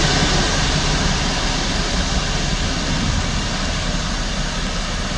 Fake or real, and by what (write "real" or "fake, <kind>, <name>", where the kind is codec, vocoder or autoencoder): real